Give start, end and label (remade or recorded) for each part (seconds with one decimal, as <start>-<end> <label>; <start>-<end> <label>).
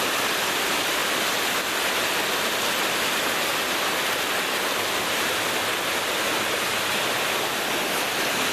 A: 0.0-8.5 recorded